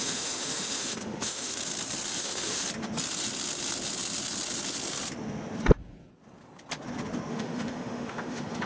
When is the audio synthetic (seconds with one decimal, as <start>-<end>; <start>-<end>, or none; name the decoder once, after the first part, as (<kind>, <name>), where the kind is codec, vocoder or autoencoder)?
0.0-1.6 (autoencoder, DAC-VAE); 2.2-2.6; 7.3-8.7